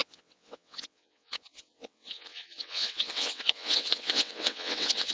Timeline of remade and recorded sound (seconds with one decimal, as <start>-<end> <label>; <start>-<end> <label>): 0.0-5.1 remade